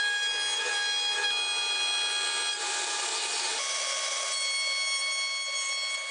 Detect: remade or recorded recorded